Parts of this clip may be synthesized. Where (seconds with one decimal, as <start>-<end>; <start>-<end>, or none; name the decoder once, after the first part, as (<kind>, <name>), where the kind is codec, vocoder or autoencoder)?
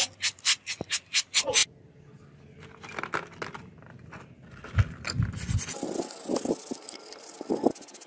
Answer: none